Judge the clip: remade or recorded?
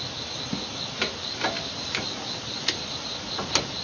recorded